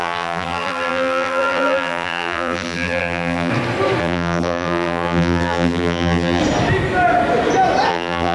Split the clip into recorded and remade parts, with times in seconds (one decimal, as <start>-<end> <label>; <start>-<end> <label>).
0.0-3.5 remade; 3.5-4.0 recorded; 4.0-6.4 remade; 6.4-7.9 recorded; 7.9-8.3 remade